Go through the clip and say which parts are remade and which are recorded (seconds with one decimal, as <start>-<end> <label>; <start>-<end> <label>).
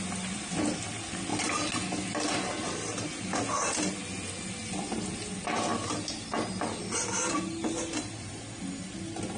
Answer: 0.0-9.4 recorded